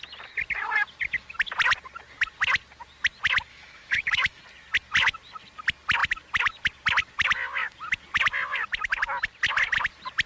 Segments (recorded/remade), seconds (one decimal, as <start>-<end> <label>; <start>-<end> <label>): 0.0-3.5 recorded; 3.5-4.4 remade; 4.4-10.3 recorded